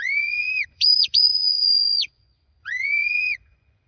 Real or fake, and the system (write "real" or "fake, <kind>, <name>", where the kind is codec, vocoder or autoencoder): fake, vocoder, Vocos